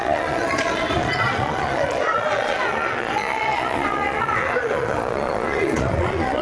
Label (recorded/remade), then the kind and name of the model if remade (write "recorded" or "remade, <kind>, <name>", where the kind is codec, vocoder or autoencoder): remade, vocoder, Vocos